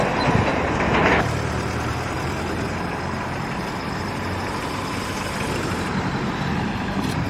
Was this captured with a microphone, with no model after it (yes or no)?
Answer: no